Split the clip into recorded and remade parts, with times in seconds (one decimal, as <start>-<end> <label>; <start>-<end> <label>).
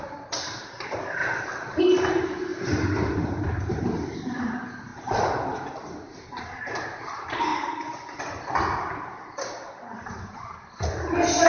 0.0-11.5 recorded